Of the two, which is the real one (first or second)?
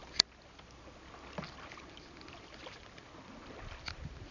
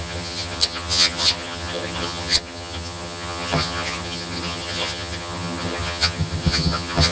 first